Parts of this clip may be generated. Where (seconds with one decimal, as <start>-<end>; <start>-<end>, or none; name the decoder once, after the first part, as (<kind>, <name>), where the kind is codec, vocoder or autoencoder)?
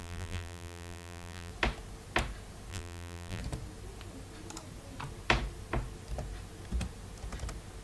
0.0-1.5 (vocoder, BigVGAN v2); 2.7-3.4